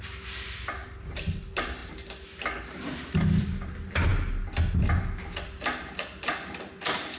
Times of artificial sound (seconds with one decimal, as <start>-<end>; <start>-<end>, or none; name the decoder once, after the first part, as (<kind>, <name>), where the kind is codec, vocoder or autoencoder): none